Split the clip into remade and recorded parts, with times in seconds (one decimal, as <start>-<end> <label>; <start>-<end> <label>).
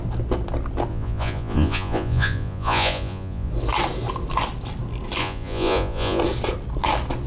0.0-0.9 recorded; 0.9-3.5 remade; 3.5-5.2 recorded; 5.2-6.2 remade; 6.2-7.3 recorded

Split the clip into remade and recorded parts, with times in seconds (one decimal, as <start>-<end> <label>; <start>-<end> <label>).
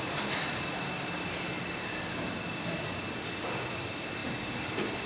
0.0-5.1 recorded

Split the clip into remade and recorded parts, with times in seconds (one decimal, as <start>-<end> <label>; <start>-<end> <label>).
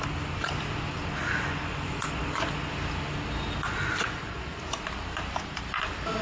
0.0-1.2 recorded; 1.2-2.2 remade; 2.2-3.7 recorded; 3.7-4.6 remade; 4.6-6.2 recorded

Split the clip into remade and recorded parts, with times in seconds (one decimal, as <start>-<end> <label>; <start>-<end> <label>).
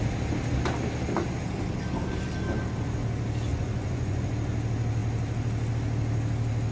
0.0-3.5 recorded; 3.5-4.3 remade; 4.3-6.7 recorded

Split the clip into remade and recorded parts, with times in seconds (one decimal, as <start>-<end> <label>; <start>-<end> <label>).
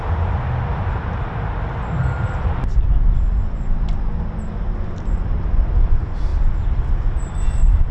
0.0-7.9 recorded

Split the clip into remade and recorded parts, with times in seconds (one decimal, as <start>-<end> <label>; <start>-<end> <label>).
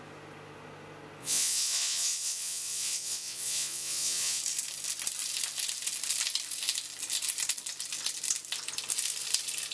0.0-1.2 recorded; 1.2-4.4 remade; 4.4-9.7 recorded